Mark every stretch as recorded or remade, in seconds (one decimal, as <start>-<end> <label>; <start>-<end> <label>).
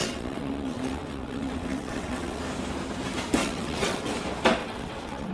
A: 0.0-2.4 remade; 2.4-3.4 recorded; 3.4-4.1 remade; 4.1-4.6 recorded; 4.6-5.3 remade